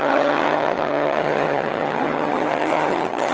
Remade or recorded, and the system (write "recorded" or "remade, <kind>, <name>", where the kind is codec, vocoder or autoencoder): remade, vocoder, HiFi-GAN